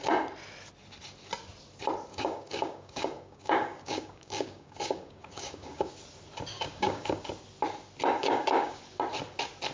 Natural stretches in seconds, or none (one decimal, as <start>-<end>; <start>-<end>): 0.0-2.1; 5.9-6.5; 7.2-8.2; 8.8-9.7

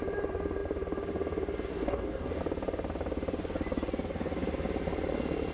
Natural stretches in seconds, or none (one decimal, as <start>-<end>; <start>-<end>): 0.0-1.7; 2.4-5.5

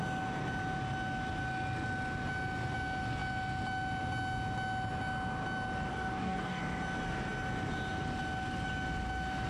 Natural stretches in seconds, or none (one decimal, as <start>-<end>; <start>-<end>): 0.0-5.9; 6.6-9.5

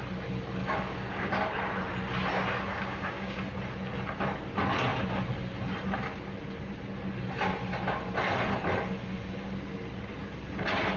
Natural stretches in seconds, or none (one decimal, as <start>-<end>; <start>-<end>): 0.0-0.6; 1.3-2.7; 3.4-11.0

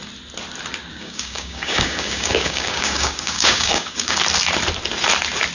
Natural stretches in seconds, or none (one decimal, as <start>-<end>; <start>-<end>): 0.0-0.9; 4.2-5.5

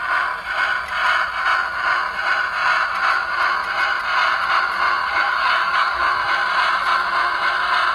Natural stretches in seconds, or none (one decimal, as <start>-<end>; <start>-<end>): 0.0-5.0; 6.1-7.9

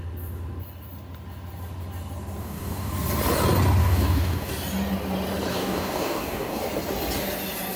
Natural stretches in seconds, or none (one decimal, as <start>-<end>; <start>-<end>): 0.0-2.4; 2.9-3.8; 4.5-5.5; 6.6-7.8